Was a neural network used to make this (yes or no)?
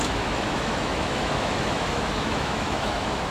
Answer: yes